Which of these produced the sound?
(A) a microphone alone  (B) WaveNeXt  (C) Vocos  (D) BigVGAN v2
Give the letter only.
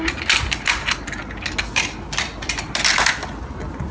A